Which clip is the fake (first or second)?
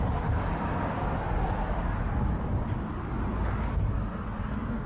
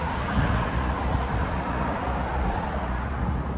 second